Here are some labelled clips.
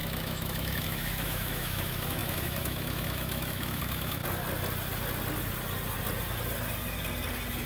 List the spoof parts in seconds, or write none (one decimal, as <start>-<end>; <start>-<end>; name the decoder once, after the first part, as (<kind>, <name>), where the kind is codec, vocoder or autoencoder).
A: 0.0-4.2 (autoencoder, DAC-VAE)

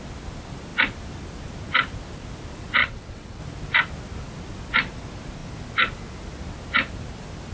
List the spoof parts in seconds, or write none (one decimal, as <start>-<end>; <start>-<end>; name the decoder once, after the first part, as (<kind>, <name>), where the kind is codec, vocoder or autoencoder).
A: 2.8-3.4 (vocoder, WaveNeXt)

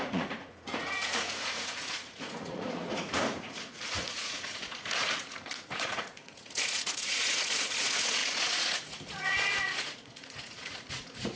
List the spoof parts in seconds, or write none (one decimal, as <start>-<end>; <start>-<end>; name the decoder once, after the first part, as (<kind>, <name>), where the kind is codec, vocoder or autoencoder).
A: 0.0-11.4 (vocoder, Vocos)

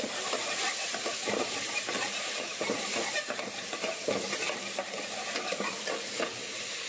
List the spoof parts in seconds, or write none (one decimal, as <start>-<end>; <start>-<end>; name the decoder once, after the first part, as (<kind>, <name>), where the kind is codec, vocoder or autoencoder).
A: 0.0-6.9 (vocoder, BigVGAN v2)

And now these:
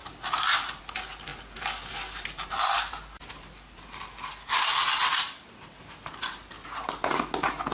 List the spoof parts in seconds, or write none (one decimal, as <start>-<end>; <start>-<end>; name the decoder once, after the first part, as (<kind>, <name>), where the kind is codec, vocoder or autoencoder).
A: none